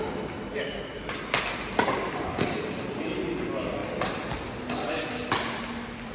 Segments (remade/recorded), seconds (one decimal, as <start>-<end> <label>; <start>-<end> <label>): 0.0-6.1 recorded